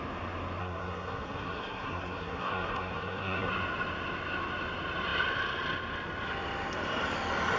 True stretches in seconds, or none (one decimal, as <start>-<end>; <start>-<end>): 0.0-0.6; 3.5-7.6